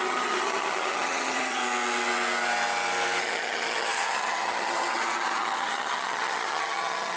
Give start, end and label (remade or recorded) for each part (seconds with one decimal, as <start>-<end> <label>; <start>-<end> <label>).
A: 0.0-1.6 remade; 1.6-3.2 recorded; 3.2-7.2 remade